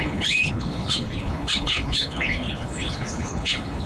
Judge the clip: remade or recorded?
remade